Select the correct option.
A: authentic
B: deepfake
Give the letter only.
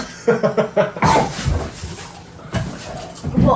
A